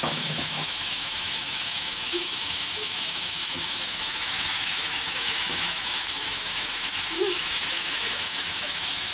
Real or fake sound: fake